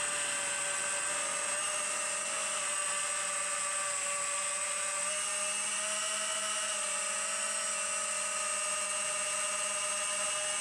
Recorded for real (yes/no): yes